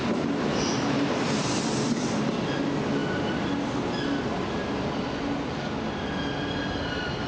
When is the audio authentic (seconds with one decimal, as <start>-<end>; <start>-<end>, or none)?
0.0-7.3